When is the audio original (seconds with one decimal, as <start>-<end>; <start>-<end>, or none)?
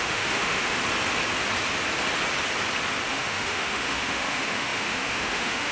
0.8-3.1